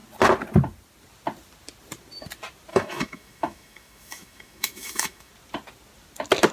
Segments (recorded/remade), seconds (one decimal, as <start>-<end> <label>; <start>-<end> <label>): 0.0-2.7 recorded; 2.7-5.3 remade; 5.3-6.5 recorded